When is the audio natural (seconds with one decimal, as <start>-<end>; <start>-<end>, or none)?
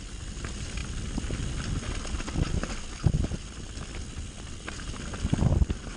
0.0-6.0